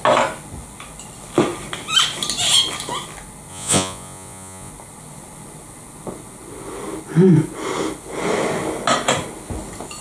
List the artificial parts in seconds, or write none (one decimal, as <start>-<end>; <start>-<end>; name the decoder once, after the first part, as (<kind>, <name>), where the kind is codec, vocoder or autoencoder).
3.5-4.7 (vocoder, Vocos)